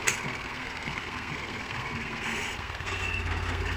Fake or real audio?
fake